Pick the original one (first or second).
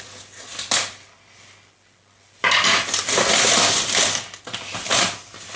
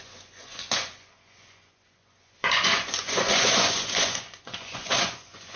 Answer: first